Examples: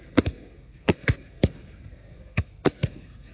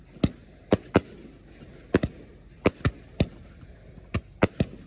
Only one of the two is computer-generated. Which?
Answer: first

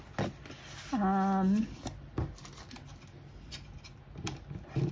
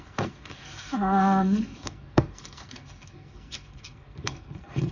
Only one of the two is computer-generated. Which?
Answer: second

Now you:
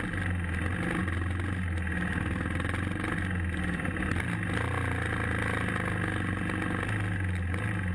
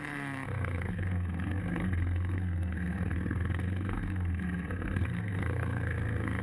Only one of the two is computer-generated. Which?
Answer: second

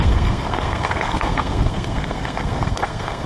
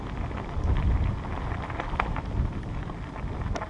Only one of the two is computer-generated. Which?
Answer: first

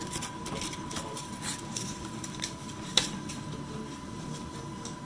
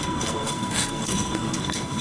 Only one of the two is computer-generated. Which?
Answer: second